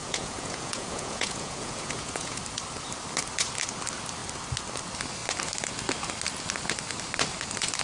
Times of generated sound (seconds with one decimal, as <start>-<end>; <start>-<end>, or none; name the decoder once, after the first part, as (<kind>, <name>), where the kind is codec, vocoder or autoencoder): 0.0-2.4 (vocoder, Vocos)

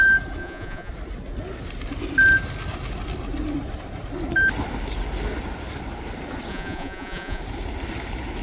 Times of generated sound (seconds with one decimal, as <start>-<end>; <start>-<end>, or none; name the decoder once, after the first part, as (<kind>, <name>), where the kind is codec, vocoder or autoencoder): 0.4-0.9 (vocoder, Vocos); 6.5-7.4

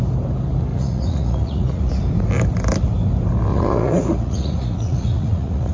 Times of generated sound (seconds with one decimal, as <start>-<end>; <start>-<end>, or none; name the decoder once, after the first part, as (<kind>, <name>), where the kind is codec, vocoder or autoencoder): 0.7-1.9 (vocoder, Vocos); 3.5-5.7

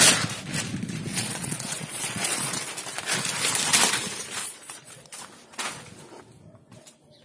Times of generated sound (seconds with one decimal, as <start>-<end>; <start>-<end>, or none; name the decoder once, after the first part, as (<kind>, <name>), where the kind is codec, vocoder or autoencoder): 1.1-2.7 (vocoder, Vocos); 4.4-5.2

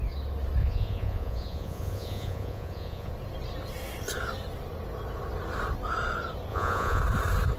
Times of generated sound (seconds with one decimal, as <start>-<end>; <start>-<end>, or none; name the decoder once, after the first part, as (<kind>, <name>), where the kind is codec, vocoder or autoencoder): 0.6-3.1 (vocoder, Vocos); 6.5-7.0